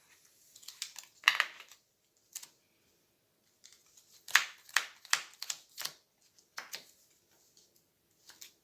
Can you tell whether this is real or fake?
real